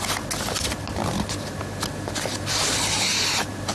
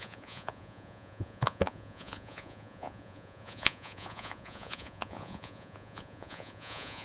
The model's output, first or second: second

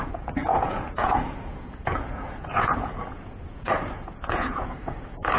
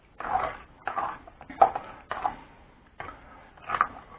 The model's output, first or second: first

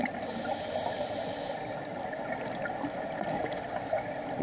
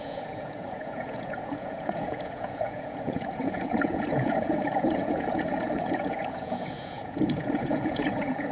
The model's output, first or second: second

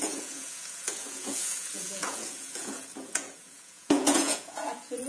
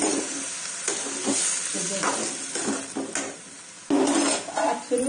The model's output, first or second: first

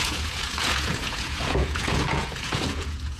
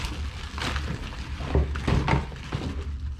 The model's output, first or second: first